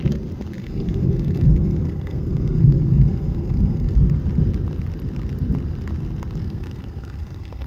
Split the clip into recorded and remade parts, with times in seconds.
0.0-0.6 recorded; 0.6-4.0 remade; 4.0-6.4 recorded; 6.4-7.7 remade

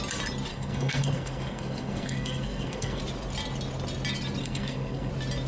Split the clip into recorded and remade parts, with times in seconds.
0.0-0.5 recorded; 0.5-3.0 remade; 3.0-4.4 recorded; 4.4-5.1 remade; 5.1-5.5 recorded

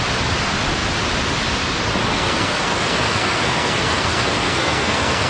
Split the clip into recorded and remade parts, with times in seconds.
0.0-2.1 recorded; 2.1-5.3 remade

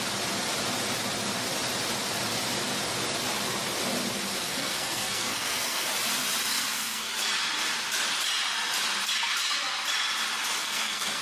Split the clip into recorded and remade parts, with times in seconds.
0.0-4.4 recorded; 4.4-5.9 remade; 5.9-6.5 recorded; 6.5-7.1 remade; 7.1-10.6 recorded; 10.6-11.2 remade

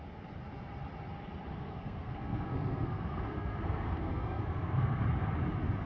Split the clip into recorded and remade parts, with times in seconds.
0.0-1.5 recorded; 1.5-5.0 remade; 5.0-5.9 recorded

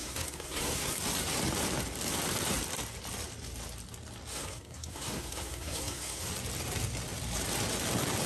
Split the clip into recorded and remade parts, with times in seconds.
0.0-1.0 remade; 1.0-4.3 recorded; 4.3-6.3 remade; 6.3-8.3 recorded

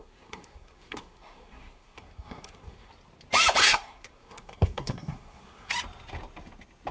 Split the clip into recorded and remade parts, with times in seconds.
0.0-2.9 remade; 2.9-3.6 recorded; 3.6-5.7 remade; 5.7-6.9 recorded